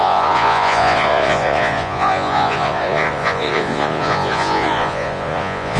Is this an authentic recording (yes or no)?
no